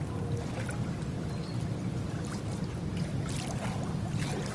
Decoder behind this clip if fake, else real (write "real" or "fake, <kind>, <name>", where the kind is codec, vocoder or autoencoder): real